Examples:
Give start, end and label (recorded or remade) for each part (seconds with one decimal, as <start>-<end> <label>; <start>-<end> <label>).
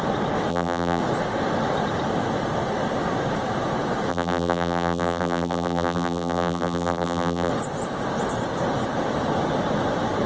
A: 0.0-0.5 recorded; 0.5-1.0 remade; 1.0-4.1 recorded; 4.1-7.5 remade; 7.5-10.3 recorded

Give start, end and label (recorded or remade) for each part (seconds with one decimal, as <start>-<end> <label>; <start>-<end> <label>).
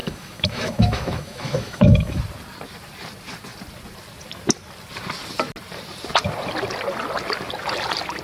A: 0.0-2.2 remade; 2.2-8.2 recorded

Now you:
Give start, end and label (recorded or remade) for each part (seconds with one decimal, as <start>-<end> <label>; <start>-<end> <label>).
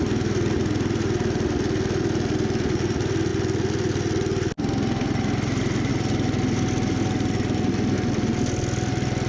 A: 0.0-9.3 recorded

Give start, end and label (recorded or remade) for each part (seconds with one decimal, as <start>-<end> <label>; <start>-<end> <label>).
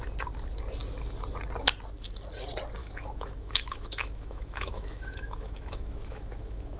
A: 0.0-2.8 recorded; 2.8-6.8 remade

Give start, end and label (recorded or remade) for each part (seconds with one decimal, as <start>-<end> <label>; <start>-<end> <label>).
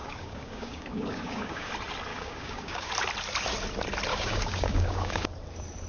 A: 0.0-1.7 remade; 1.7-2.1 recorded; 2.1-2.9 remade; 2.9-4.1 recorded; 4.1-5.3 remade; 5.3-5.9 recorded